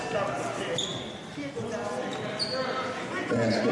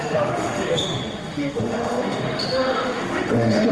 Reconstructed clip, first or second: second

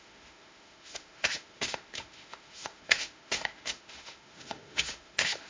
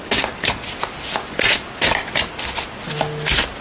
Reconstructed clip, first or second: first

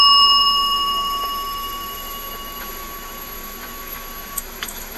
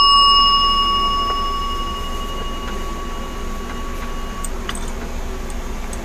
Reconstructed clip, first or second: first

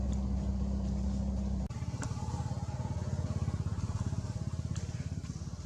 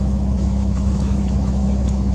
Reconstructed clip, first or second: second